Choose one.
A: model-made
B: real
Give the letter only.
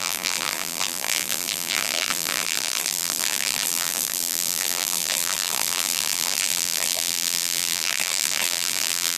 A